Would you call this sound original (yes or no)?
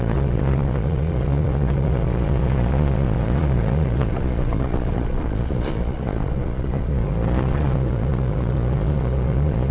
no